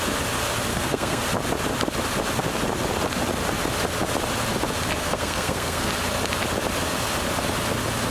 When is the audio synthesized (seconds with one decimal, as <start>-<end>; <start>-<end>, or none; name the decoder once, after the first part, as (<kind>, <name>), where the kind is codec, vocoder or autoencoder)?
0.7-1.2 (codec, SNAC); 5.0-5.9

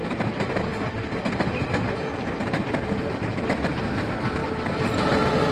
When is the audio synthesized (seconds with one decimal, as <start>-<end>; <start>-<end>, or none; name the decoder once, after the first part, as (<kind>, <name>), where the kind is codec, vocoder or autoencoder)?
none

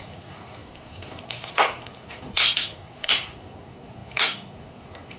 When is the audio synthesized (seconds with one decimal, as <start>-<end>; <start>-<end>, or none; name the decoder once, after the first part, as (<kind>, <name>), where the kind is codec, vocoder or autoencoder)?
0.0-5.2 (codec, SNAC)

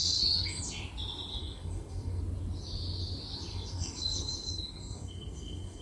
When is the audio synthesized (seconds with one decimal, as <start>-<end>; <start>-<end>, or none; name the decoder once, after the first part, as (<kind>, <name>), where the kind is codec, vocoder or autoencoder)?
0.0-0.6 (codec, SNAC); 1.3-2.2; 3.5-5.8